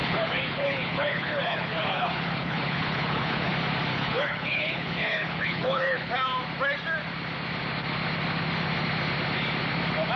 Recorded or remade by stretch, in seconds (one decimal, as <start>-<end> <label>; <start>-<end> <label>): 0.0-3.5 remade; 3.5-3.9 recorded; 3.9-6.1 remade; 6.1-10.2 recorded